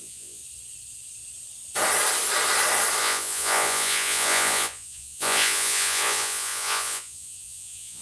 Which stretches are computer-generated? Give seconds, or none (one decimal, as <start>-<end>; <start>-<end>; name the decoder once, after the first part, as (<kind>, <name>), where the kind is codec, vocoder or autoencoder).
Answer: 0.0-0.4 (vocoder, Vocos); 3.0-8.0